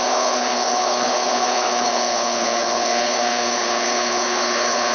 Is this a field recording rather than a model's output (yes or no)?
no